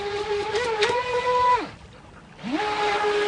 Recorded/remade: recorded